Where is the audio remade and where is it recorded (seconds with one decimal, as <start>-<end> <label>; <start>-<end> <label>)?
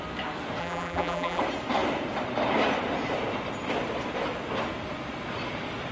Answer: 0.0-0.6 recorded; 0.6-1.4 remade; 1.4-5.9 recorded